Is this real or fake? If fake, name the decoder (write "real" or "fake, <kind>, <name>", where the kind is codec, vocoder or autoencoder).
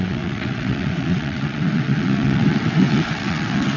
fake, vocoder, WaveNeXt